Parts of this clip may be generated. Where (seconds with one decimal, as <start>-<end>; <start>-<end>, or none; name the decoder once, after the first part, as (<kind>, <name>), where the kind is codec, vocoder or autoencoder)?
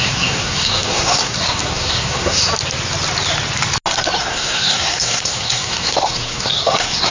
0.0-2.5 (codec, SNAC); 4.2-7.1